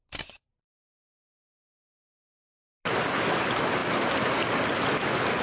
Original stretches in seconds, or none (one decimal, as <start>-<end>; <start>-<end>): 0.0-5.4

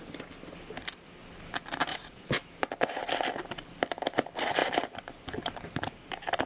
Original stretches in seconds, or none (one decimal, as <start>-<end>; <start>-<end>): 0.0-1.9; 2.5-6.5

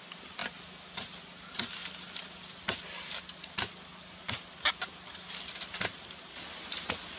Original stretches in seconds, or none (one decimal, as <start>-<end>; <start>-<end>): 0.0-1.8; 5.6-7.2

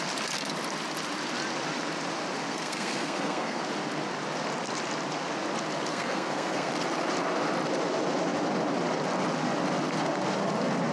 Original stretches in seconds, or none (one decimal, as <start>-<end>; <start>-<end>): 0.0-2.5; 3.6-5.9; 6.7-10.9

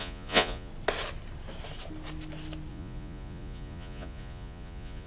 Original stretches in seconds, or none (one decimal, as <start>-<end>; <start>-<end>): 0.7-2.7

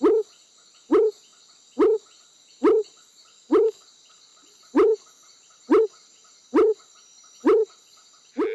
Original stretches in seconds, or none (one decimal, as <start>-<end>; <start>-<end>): 0.0-8.5

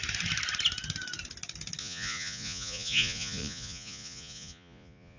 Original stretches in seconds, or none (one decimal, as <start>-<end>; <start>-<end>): 0.0-1.8

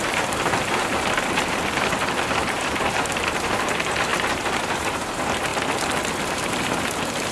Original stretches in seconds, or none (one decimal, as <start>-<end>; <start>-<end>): 5.5-6.3